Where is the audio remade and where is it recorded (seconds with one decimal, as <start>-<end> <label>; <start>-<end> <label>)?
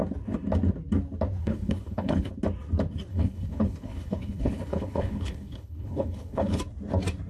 0.0-1.4 recorded; 1.4-2.3 remade; 2.3-3.1 recorded; 3.1-6.6 remade; 6.6-7.3 recorded